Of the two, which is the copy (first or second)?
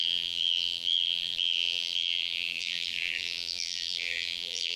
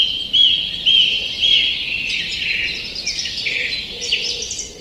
first